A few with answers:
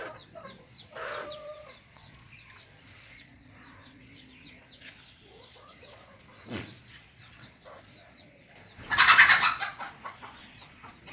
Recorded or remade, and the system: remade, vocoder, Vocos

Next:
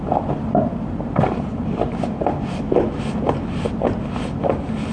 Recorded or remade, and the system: recorded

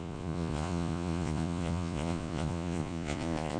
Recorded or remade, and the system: remade, vocoder, Vocos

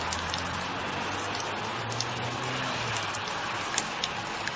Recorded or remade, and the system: recorded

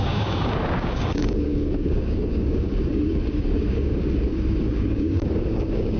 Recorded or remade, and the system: remade, codec, DAC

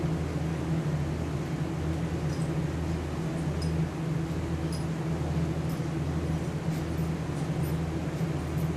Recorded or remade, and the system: recorded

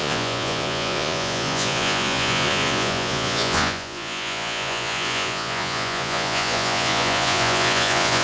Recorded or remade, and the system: remade, vocoder, Vocos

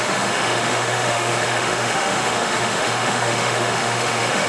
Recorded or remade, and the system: remade, autoencoder, DAC-VAE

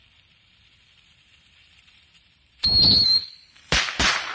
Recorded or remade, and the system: remade, vocoder, BigVGAN v2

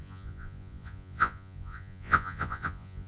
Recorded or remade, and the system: remade, vocoder, Vocos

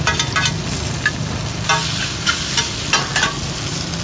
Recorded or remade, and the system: recorded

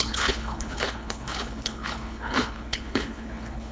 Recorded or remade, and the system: remade, codec, HILCodec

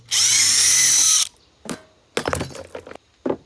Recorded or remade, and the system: recorded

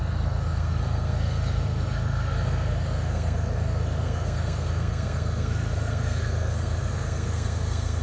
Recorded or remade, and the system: remade, codec, SNAC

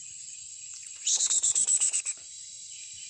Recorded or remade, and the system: recorded